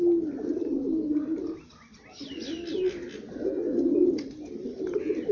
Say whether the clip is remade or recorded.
recorded